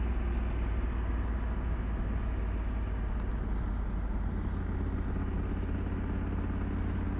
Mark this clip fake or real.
real